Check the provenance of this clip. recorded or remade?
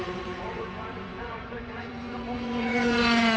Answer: remade